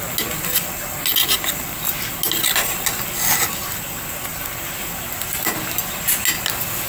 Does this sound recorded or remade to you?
recorded